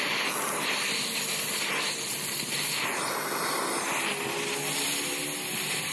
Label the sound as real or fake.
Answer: real